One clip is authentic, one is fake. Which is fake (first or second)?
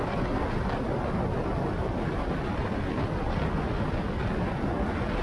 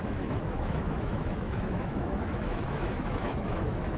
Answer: second